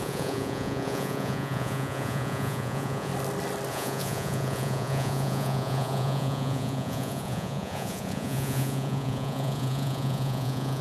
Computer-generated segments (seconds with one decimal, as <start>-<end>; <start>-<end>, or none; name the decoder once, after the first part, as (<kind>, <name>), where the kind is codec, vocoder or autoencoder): 0.0-3.1 (vocoder, Vocos); 3.7-10.8